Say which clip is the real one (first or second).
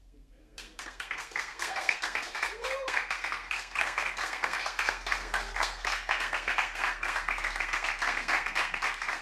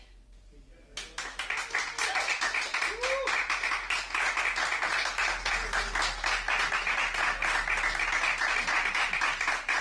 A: second